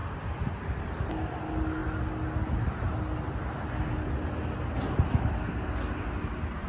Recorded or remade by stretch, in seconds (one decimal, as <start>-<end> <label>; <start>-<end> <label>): 0.0-0.6 remade; 0.6-6.7 recorded